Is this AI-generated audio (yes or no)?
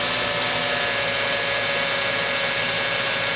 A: no